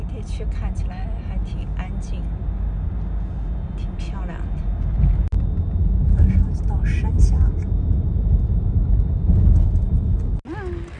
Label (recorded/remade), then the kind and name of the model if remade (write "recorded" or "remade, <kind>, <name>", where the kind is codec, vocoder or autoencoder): recorded